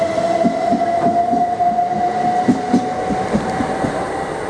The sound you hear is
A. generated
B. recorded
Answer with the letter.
B